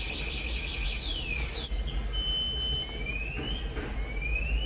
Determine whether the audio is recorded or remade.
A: recorded